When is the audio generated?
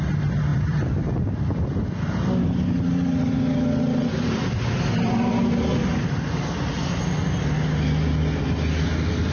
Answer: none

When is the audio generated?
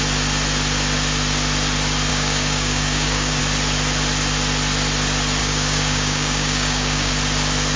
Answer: 2.1-3.4 (codec, DAC); 5.4-7.1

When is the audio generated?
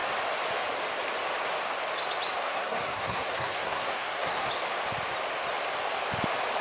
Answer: 2.4-4.5 (codec, SNAC)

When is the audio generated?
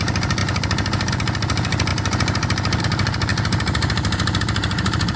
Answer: 0.0-5.2 (vocoder, BigVGAN v2)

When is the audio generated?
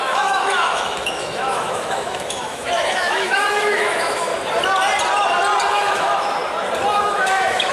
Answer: 0.0-4.3 (autoencoder, DAC-VAE); 5.7-6.4; 7.0-7.7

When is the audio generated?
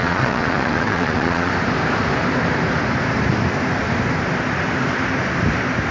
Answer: 0.0-1.5 (vocoder, Vocos)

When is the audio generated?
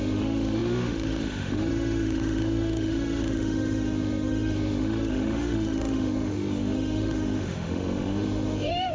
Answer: 0.0-8.9 (autoencoder, DAC-VAE)